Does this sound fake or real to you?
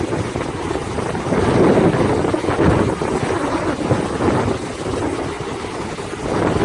real